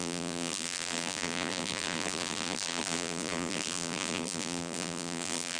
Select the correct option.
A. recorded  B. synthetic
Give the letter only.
B